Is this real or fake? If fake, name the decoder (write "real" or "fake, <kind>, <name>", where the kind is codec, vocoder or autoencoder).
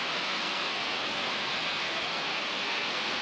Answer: fake, codec, SNAC